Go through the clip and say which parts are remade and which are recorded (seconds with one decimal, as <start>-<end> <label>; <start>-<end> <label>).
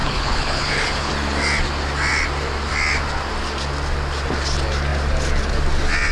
0.0-1.1 remade; 1.1-6.1 recorded